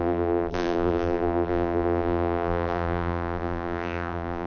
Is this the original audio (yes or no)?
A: no